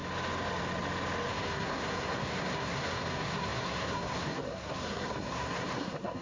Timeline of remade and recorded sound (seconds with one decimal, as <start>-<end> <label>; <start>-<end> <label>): 0.0-1.3 recorded; 1.3-6.2 remade